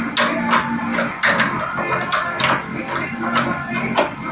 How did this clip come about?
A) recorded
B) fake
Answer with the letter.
A